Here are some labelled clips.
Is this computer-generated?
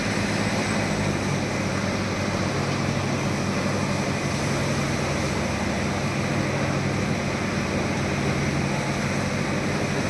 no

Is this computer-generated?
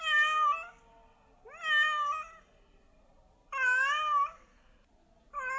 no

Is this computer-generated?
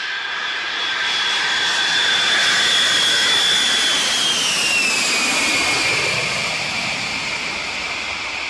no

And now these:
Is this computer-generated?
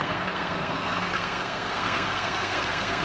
yes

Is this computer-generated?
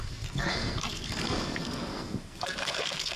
yes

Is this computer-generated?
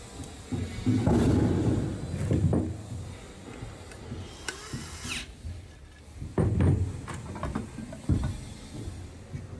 no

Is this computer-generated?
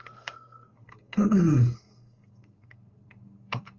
yes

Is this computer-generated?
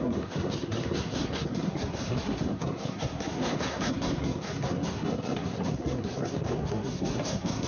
yes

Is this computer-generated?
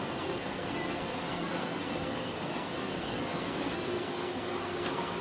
yes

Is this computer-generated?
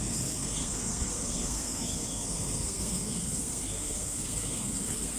yes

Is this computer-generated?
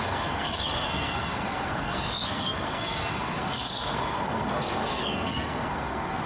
yes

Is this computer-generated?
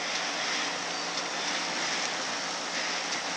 no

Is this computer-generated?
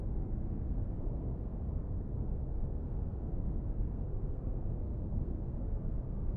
yes